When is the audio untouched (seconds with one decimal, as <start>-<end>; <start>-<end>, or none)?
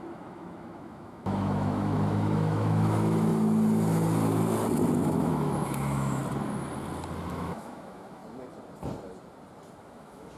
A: 3.3-5.0; 6.2-7.3; 8.2-9.8